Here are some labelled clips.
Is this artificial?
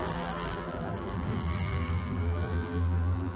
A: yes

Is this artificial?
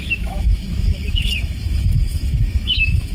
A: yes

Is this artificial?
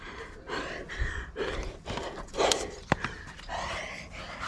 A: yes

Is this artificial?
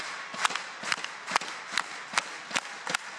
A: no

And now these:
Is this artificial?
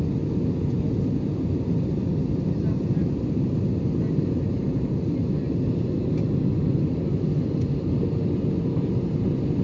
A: no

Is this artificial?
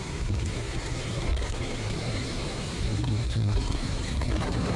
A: yes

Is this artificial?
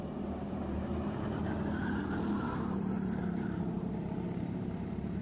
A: yes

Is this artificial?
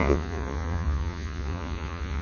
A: yes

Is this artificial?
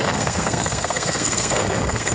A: yes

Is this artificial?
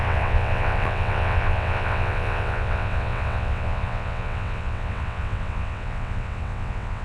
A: yes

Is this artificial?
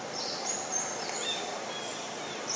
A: no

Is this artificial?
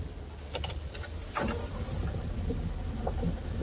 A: no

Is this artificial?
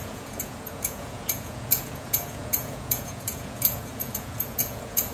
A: yes